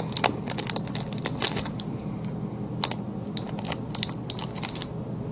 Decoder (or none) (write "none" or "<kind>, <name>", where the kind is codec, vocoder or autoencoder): none